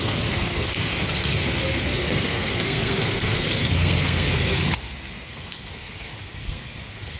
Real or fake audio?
fake